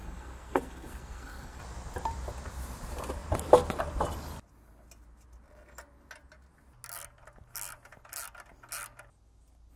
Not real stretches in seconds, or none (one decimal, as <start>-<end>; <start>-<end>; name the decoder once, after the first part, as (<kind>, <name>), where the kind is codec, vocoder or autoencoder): 0.0-1.6 (codec, SNAC)